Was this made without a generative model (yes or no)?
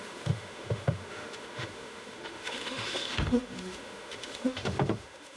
no